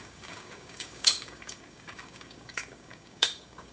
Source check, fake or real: fake